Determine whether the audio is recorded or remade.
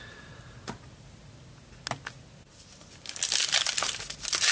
recorded